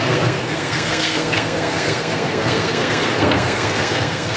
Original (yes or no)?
no